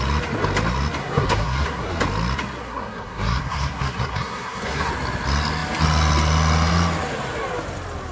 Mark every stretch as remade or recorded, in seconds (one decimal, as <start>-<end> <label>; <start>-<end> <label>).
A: 0.0-1.0 recorded; 1.0-2.0 remade; 2.0-2.6 recorded; 2.6-4.9 remade; 4.9-8.1 recorded